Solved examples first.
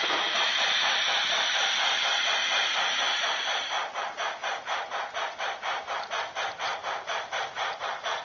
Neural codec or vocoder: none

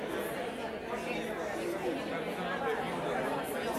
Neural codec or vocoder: none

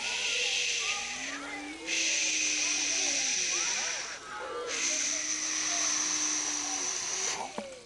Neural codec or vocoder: none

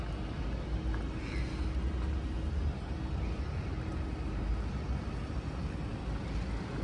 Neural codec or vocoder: none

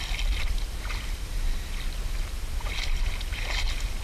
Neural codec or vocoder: none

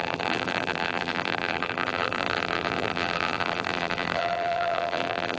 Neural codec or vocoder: vocoder, BigVGAN v2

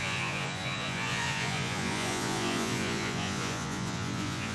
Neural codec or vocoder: vocoder, Vocos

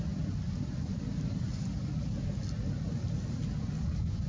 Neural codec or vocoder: none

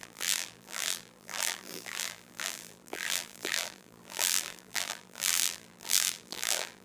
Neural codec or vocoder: vocoder, BigVGAN v2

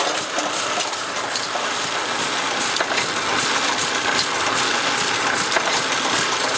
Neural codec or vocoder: none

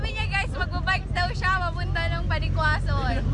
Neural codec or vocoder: none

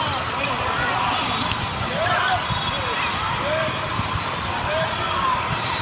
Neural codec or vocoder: none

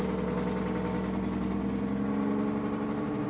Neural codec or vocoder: none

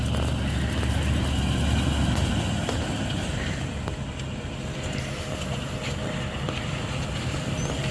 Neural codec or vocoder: none